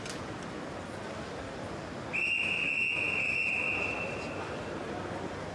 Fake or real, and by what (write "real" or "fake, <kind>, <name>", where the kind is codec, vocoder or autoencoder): real